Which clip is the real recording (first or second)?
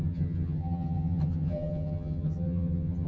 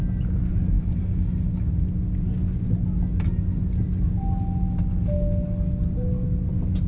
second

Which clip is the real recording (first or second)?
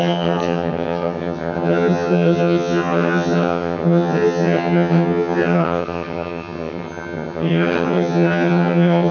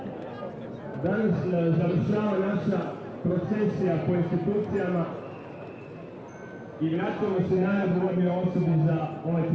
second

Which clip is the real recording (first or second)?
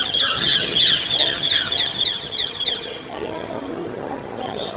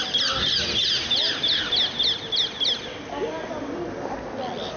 second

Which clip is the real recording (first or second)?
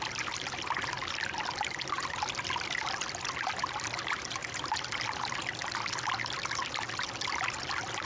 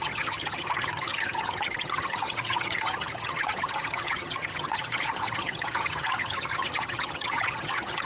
first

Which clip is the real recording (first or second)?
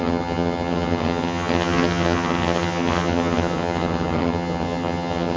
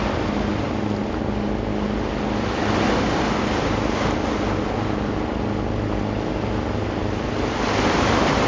second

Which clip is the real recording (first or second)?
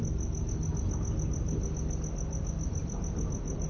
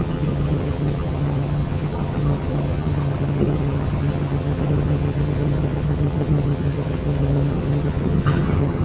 first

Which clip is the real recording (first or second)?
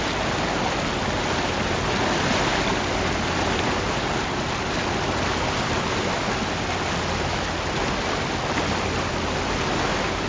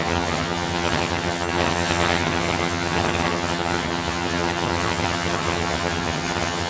first